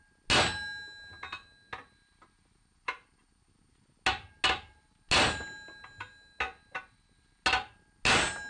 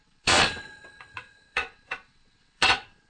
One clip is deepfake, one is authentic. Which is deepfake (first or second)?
second